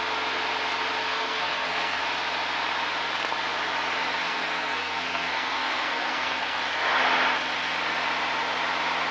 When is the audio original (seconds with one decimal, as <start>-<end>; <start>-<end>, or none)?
0.0-1.0; 2.0-4.2; 6.6-9.1